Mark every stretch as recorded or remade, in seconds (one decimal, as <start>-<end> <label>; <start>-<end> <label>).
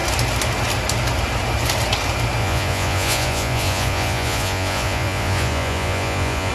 0.0-2.4 recorded; 2.4-6.5 remade